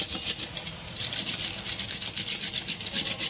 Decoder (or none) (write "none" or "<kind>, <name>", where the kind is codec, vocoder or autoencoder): none